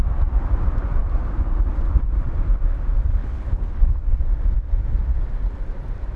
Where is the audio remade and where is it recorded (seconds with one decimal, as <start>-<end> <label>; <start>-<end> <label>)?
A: 0.0-3.1 recorded; 3.1-4.2 remade; 4.2-6.2 recorded